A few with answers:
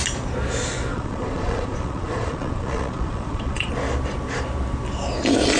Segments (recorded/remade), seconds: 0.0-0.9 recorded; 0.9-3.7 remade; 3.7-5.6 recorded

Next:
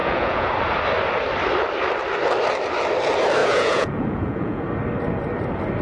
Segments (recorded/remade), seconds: 0.0-0.5 remade; 0.5-3.4 recorded; 3.4-4.6 remade; 4.6-5.8 recorded

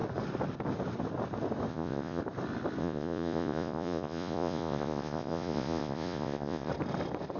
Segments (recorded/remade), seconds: 0.0-1.7 recorded; 1.7-2.2 remade; 2.2-2.8 recorded; 2.8-6.7 remade; 6.7-7.4 recorded

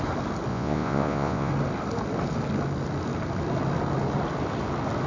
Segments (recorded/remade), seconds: 0.0-0.5 recorded; 0.5-1.5 remade; 1.5-5.1 recorded

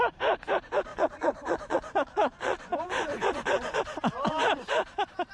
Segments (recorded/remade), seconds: 0.0-0.9 recorded; 0.9-3.8 remade; 3.8-5.3 recorded